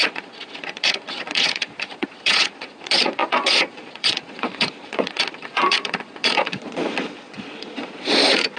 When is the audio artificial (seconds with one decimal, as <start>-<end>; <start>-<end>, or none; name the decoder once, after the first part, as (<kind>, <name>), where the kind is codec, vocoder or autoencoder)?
0.0-8.6 (vocoder, Vocos)